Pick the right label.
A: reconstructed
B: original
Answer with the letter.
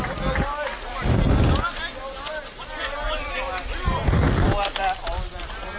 B